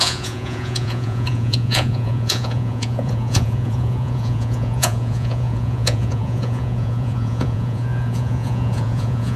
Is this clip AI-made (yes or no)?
yes